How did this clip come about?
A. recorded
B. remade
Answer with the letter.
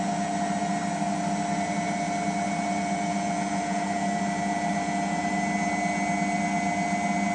A